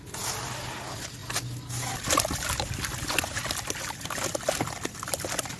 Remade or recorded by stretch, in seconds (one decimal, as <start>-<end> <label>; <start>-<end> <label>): 0.0-5.6 recorded